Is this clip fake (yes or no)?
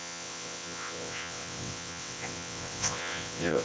yes